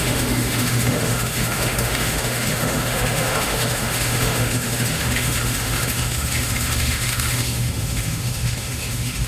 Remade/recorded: remade